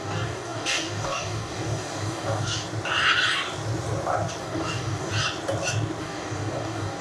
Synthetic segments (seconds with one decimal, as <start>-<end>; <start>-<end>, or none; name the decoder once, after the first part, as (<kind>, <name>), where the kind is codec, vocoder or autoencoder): 0.0-2.6 (codec, DAC); 4.4-5.1; 6.0-7.0